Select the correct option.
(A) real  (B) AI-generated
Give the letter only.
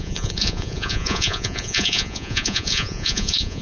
B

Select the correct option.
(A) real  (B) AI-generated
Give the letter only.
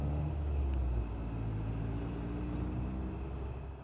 A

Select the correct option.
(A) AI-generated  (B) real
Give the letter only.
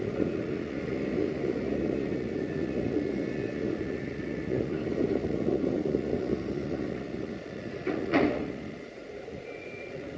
A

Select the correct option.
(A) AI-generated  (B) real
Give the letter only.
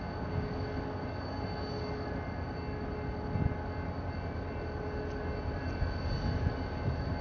B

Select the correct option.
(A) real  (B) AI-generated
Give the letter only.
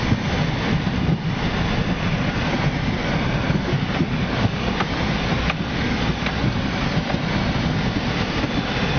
A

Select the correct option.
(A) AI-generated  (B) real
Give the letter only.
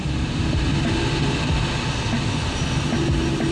B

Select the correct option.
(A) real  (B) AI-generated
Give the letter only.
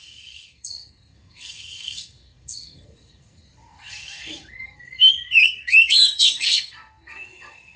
B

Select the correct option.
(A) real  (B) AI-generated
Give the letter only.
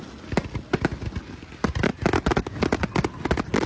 A